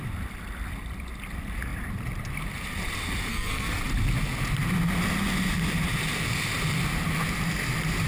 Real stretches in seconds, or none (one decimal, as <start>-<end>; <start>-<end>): 0.0-3.3; 3.8-8.1